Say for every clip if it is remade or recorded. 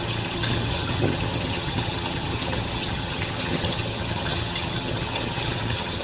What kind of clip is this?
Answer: remade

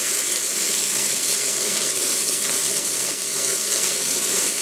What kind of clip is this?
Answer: remade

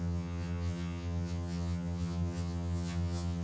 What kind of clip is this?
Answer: remade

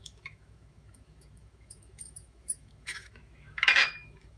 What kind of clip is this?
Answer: remade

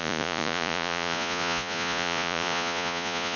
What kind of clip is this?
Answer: remade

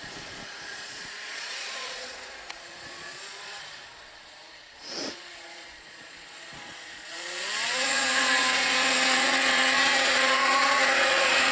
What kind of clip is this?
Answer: remade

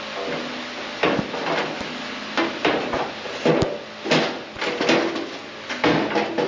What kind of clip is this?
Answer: recorded